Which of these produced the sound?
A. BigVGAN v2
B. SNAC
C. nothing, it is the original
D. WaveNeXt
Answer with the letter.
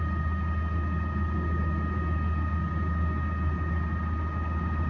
C